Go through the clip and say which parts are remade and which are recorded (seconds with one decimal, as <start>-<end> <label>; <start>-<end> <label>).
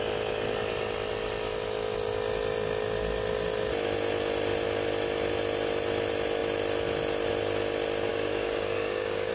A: 0.0-8.1 recorded; 8.1-9.3 remade